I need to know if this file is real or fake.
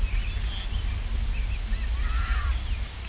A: real